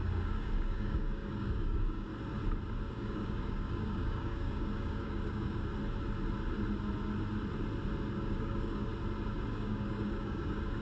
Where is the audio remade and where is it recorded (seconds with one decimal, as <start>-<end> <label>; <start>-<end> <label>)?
0.0-2.1 remade; 2.1-2.9 recorded; 2.9-5.7 remade; 5.7-8.1 recorded; 8.1-8.9 remade; 8.9-9.5 recorded; 9.5-10.8 remade